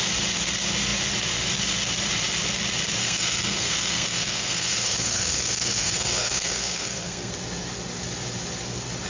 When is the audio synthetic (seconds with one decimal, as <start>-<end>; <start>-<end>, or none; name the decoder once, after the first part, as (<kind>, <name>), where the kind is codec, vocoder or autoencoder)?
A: 3.0-7.3 (codec, SNAC)